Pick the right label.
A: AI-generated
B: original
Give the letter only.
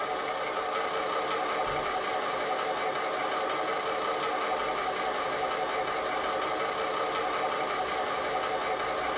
B